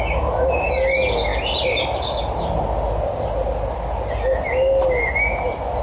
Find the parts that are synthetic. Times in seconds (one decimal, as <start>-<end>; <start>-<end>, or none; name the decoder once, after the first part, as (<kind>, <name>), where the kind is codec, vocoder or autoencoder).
none